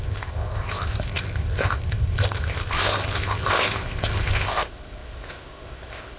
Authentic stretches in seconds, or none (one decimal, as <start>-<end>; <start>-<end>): none